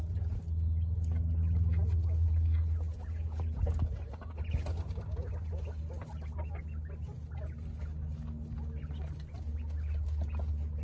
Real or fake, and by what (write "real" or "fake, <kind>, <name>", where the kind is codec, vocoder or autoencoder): real